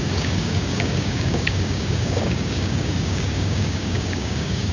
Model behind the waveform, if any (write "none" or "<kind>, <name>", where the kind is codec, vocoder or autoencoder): codec, DAC